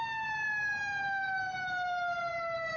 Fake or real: real